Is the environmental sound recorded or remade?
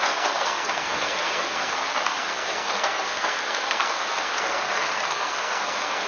remade